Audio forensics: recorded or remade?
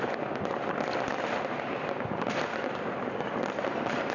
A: recorded